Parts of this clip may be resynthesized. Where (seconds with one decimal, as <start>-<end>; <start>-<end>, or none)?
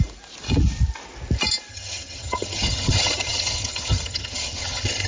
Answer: 1.7-5.1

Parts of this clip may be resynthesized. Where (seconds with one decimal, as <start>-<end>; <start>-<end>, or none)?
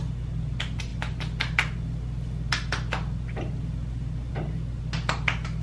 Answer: none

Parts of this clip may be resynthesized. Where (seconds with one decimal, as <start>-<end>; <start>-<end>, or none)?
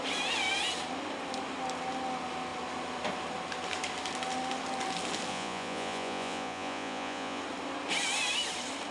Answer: 5.3-7.4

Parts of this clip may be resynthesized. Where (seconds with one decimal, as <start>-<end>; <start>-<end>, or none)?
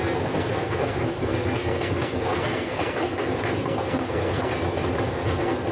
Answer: 0.0-4.5; 5.1-5.7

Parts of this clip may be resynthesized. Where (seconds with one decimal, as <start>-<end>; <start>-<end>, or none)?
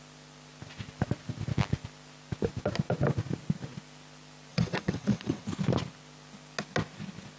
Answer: 4.5-5.4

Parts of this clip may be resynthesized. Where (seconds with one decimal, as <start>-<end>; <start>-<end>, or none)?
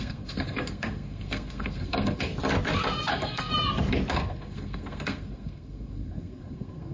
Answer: 0.0-2.3; 3.1-3.5; 4.1-6.9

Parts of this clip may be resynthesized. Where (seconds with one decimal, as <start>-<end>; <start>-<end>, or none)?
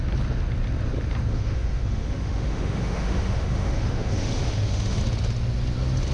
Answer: 1.3-5.0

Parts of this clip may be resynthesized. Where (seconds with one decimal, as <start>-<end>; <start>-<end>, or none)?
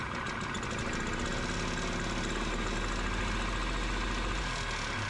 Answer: none